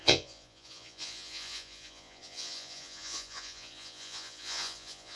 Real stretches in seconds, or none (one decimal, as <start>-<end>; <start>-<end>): none